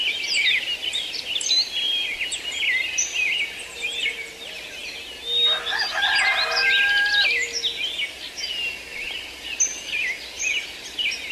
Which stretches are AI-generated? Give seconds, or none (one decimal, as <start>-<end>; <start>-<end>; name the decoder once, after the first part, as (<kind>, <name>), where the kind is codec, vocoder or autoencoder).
none